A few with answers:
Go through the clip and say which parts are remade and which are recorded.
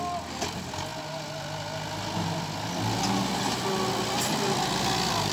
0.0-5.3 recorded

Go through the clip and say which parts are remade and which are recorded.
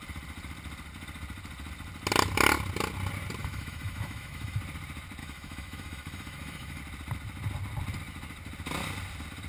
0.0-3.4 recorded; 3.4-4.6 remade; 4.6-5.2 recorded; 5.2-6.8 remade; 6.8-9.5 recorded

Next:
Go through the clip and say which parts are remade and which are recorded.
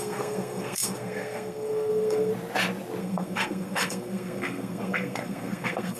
0.0-2.3 remade; 2.3-3.0 recorded; 3.0-6.0 remade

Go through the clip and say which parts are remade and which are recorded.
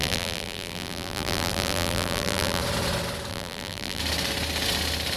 0.0-2.6 remade; 2.6-3.3 recorded; 3.3-4.0 remade; 4.0-5.2 recorded